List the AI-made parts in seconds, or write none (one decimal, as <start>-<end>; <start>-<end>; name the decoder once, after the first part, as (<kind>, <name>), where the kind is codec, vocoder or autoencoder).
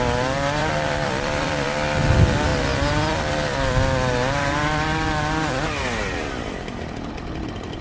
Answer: 0.6-1.5 (vocoder, BigVGAN v2)